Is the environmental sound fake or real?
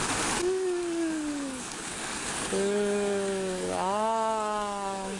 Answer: fake